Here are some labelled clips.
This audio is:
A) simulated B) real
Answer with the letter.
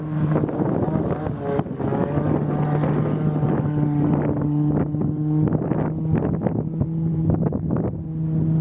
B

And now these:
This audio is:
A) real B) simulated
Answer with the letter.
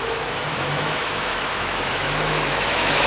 B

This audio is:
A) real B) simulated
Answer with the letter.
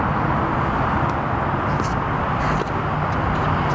A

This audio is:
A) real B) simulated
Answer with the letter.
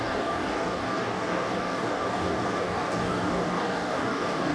B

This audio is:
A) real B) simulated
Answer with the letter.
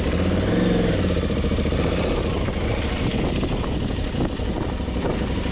A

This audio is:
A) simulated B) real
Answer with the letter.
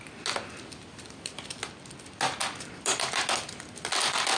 B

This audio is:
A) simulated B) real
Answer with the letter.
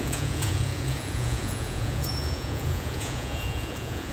A